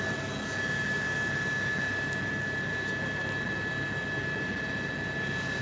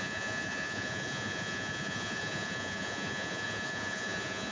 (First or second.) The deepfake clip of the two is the second